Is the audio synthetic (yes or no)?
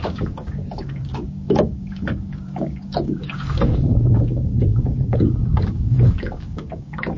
yes